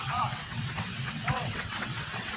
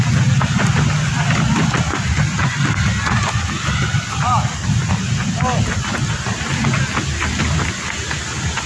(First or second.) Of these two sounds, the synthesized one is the first